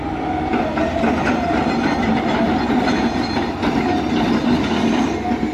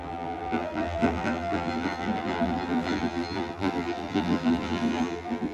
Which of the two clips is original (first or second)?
first